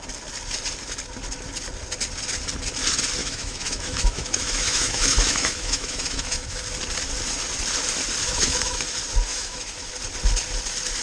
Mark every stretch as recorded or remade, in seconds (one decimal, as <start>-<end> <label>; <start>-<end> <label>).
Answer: 0.0-3.2 recorded; 3.2-6.6 remade; 6.6-8.2 recorded; 8.2-8.8 remade; 8.8-9.3 recorded; 9.3-9.9 remade; 9.9-11.0 recorded